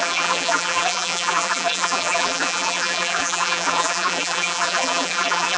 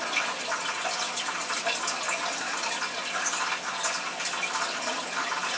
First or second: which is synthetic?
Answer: first